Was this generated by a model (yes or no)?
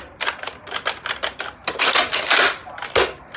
no